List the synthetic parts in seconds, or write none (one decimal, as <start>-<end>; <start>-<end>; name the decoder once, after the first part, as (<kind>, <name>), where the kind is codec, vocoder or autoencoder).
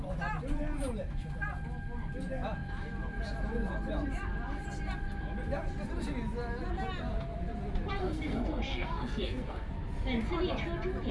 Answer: 8.0-9.7 (codec, SNAC)